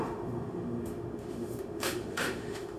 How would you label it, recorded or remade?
remade